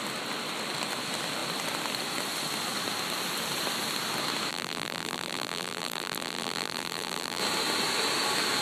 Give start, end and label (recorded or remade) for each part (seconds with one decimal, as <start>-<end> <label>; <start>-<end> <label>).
0.0-4.5 recorded; 4.5-7.4 remade; 7.4-8.6 recorded